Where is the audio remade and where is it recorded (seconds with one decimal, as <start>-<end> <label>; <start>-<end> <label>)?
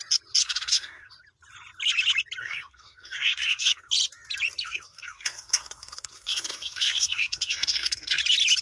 0.0-0.4 recorded; 0.4-1.1 remade; 1.1-2.4 recorded; 2.4-3.9 remade; 3.9-4.6 recorded; 4.6-8.2 remade; 8.2-8.6 recorded